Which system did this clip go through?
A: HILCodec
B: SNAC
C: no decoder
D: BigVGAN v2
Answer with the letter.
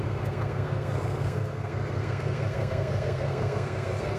B